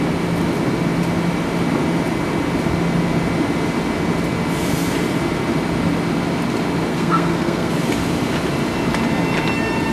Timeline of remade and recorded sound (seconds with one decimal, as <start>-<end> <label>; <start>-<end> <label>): 0.0-6.9 recorded; 6.9-7.7 remade; 7.7-9.9 recorded